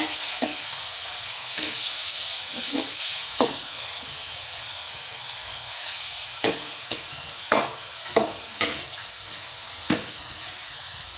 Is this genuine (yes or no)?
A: no